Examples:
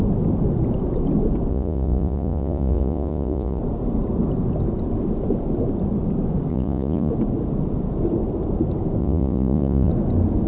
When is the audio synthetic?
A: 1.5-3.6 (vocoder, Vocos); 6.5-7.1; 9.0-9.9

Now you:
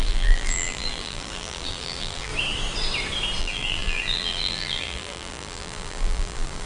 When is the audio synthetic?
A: 0.0-2.3 (vocoder, BigVGAN v2); 3.4-6.7

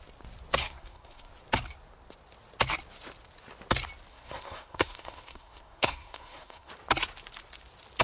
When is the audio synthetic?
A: 0.6-1.3 (codec, SNAC); 4.1-6.7

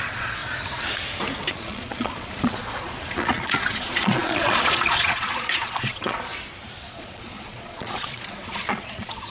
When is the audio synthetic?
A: 0.0-0.4 (vocoder, Vocos); 1.5-6.3; 6.9-9.3

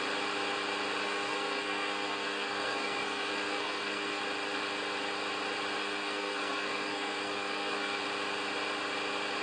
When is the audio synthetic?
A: 1.0-4.2 (codec, SNAC); 5.8-8.0

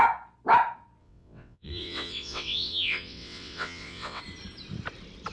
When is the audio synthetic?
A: 1.0-4.2 (vocoder, WaveNeXt)

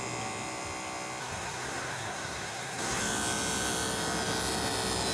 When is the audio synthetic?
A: 1.2-3.0 (codec, SNAC)